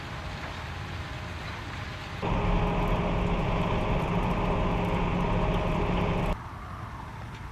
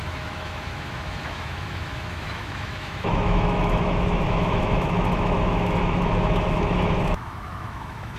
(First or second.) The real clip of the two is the first